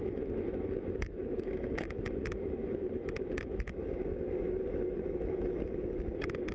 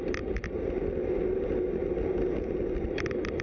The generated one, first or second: first